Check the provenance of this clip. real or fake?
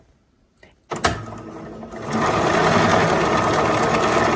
real